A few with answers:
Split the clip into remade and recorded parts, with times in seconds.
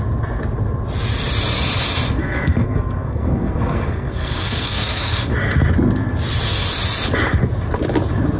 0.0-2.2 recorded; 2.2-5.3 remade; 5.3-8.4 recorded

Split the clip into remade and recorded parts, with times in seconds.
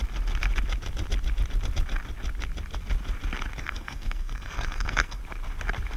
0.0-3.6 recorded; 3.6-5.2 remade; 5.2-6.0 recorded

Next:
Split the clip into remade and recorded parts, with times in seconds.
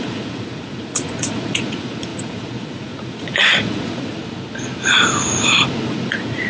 0.0-4.2 remade; 4.2-5.9 recorded; 5.9-6.5 remade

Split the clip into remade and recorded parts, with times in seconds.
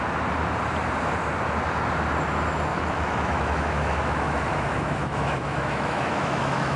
0.0-2.7 recorded; 2.7-6.8 remade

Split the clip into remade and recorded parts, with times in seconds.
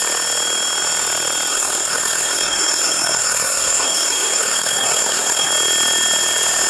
0.0-1.5 recorded; 1.5-5.5 remade; 5.5-6.7 recorded